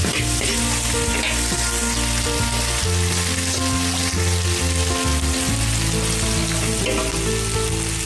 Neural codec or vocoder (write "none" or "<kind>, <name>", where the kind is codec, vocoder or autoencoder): none